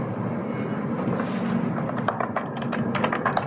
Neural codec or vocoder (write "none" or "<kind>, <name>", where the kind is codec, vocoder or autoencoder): none